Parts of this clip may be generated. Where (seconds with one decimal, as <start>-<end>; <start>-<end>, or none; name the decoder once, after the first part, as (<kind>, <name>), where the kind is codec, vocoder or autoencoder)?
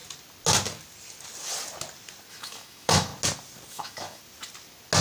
2.3-3.1 (autoencoder, DAC-VAE); 3.7-4.2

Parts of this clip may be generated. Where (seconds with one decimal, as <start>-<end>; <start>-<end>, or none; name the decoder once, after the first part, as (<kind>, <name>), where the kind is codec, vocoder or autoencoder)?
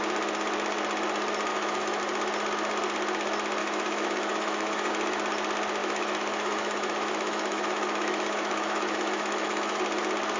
1.5-2.0 (autoencoder, DAC-VAE); 3.6-4.9; 5.8-9.8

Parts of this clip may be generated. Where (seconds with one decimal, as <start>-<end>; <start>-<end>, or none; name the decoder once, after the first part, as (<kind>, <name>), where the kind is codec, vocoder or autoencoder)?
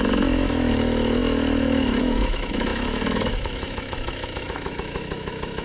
0.0-5.6 (autoencoder, DAC-VAE)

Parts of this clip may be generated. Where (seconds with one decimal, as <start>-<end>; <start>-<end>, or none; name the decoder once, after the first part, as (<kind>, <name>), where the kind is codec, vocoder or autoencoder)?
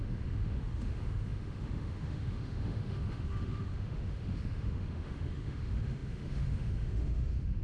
0.0-7.6 (autoencoder, DAC-VAE)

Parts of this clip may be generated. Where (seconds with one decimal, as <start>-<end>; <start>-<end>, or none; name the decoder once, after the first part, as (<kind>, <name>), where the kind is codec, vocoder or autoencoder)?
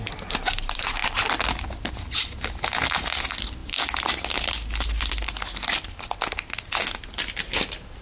none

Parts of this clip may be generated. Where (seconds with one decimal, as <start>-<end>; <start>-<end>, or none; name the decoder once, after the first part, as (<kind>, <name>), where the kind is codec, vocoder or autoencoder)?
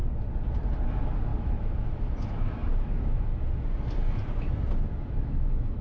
0.9-3.3 (autoencoder, DAC-VAE); 5.2-5.8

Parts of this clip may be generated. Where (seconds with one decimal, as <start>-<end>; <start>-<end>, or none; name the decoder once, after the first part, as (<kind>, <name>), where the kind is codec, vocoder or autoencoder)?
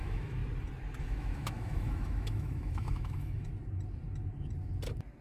0.0-0.4 (autoencoder, DAC-VAE); 1.0-3.5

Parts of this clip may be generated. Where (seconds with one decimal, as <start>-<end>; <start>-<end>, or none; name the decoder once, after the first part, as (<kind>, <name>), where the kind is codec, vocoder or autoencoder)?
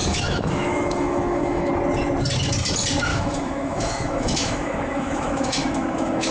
0.0-1.7 (autoencoder, DAC-VAE); 3.1-6.3